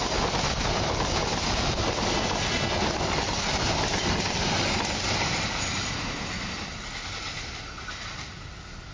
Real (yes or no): yes